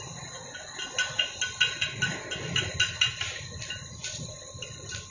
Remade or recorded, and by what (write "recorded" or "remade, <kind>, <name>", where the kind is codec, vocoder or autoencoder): recorded